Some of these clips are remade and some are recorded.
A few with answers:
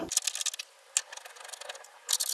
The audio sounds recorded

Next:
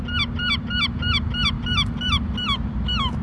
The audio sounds recorded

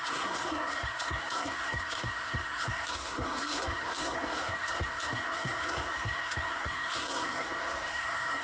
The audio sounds remade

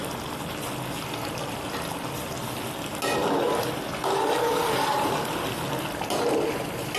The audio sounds recorded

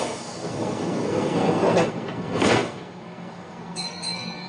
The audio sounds remade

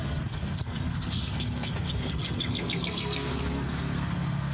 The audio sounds remade